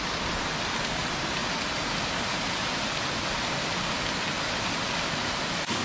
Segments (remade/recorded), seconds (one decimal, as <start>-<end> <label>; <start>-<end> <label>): 0.0-5.8 recorded